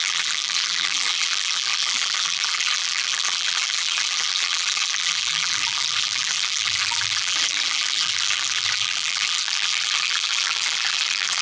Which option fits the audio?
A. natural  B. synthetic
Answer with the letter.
B